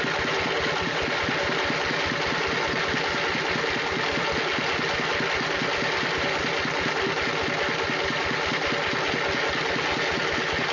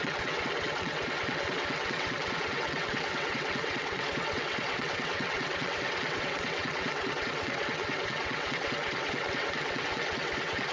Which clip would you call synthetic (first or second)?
second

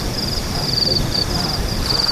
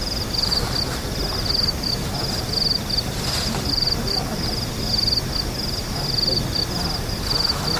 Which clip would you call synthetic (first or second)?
first